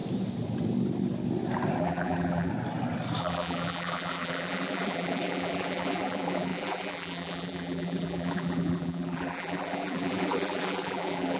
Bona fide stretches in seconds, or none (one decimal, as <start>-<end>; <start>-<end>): 0.0-1.8; 2.5-3.2